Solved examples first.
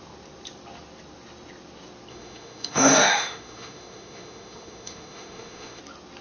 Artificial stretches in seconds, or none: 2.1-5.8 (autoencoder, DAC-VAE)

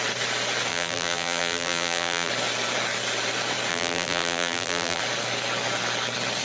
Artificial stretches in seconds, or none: 0.7-2.3 (vocoder, BigVGAN v2); 3.7-5.0

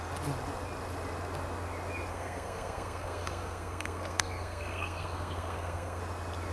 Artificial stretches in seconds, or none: 2.1-6.0 (codec, SNAC)

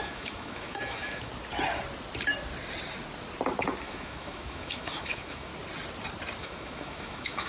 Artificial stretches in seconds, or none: 0.0-1.3 (autoencoder, DAC-VAE); 3.8-5.5; 6.4-7.5

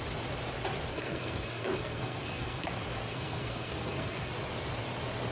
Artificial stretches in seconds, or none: 0.9-2.7 (codec, SNAC); 3.1-4.3

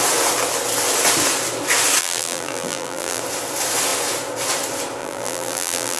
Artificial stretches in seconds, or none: 2.0-3.2 (vocoder, BigVGAN v2); 5.0-6.0

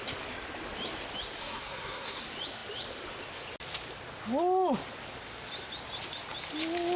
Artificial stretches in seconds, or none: 1.4-2.2 (codec, SNAC)

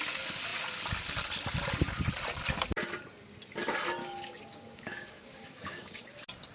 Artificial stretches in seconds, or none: 4.0-6.1 (codec, DAC)